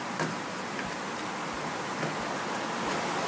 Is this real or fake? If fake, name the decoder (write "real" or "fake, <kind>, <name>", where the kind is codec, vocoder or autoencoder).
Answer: real